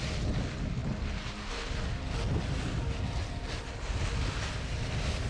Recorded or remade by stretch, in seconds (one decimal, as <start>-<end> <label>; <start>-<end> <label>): 0.0-5.3 recorded